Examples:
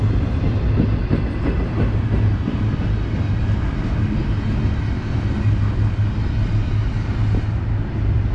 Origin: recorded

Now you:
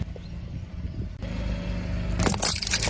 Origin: recorded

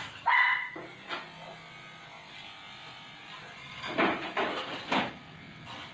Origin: recorded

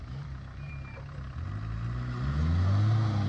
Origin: recorded